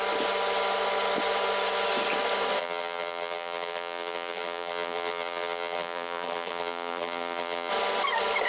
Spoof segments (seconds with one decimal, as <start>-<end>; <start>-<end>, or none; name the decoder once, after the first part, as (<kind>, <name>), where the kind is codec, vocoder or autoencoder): 2.6-7.7 (vocoder, BigVGAN v2)

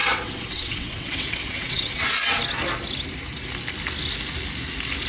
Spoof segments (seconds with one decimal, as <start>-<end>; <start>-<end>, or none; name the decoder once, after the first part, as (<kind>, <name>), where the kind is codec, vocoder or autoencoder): 0.0-2.4 (vocoder, WaveNeXt)

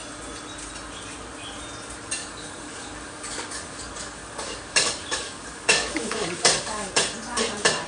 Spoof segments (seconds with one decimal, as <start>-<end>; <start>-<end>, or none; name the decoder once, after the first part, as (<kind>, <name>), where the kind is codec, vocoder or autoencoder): 2.2-6.9 (codec, DAC)

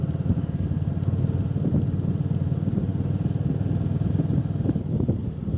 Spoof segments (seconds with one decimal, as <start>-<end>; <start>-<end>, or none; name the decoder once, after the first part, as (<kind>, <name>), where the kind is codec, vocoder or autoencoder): 0.4-0.9 (codec, SNAC)

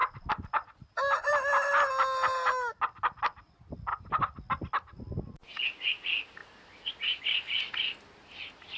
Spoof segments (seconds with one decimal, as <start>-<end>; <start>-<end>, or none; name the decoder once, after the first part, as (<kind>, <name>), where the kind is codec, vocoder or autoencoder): 0.0-1.9 (vocoder, BigVGAN v2); 6.4-6.9

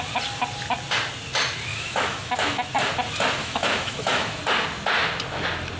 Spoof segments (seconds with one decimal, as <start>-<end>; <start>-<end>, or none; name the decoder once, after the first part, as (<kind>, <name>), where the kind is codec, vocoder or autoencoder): 1.7-2.7 (autoencoder, DAC-VAE); 3.4-4.4

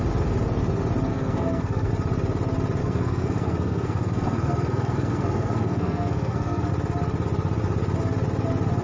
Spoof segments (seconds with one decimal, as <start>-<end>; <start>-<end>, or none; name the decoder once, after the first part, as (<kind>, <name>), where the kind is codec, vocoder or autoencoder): 1.1-1.9 (codec, SNAC); 2.8-6.7